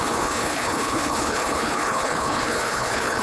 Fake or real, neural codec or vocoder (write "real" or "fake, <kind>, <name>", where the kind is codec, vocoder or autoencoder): fake, codec, HILCodec